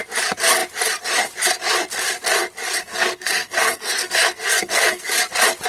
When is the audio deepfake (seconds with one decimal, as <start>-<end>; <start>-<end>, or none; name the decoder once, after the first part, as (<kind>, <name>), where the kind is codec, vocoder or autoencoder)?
2.9-5.1 (codec, SNAC)